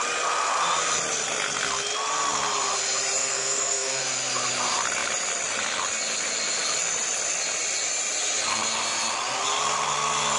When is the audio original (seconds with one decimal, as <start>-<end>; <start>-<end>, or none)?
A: 0.0-3.2; 4.0-10.4